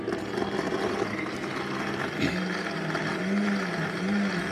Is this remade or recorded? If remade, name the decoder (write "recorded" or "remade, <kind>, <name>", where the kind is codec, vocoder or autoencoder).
recorded